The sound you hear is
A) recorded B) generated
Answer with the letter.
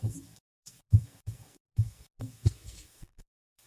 B